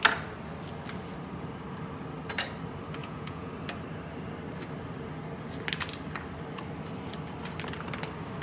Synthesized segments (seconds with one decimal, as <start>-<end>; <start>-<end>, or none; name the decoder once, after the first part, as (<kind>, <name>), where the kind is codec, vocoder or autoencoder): 3.0-3.5 (vocoder, Vocos)